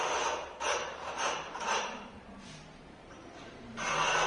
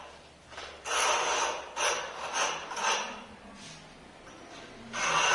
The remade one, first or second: first